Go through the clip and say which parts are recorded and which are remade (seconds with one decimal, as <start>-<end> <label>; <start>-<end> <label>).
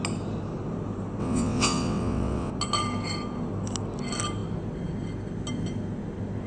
0.0-1.2 recorded; 1.2-2.5 remade; 2.5-6.5 recorded